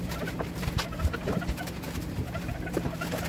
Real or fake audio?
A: fake